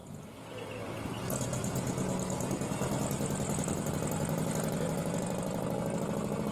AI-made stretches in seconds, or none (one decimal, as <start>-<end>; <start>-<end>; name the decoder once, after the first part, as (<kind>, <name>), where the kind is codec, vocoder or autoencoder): 0.0-3.9 (vocoder, BigVGAN v2)